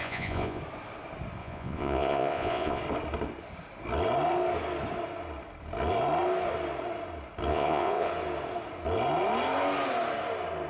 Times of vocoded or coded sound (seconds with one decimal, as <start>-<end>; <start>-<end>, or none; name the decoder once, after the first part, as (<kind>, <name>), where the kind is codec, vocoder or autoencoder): 0.0-0.6 (vocoder, Vocos); 1.4-2.8; 7.5-8.1